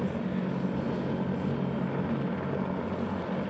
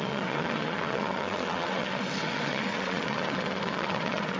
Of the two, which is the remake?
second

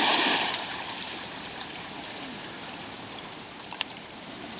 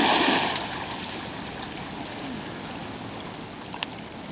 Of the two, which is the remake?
first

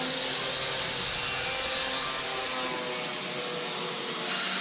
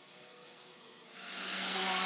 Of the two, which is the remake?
second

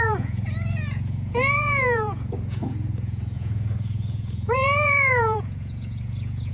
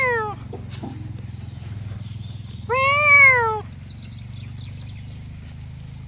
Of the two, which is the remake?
first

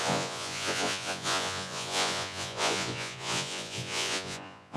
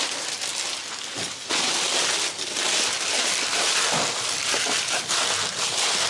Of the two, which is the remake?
first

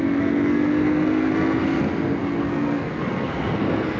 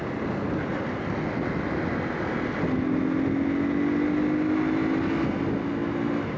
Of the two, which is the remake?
first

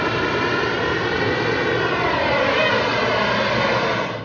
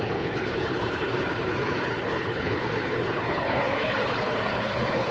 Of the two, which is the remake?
second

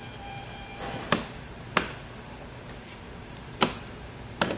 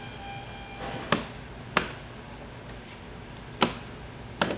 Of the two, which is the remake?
first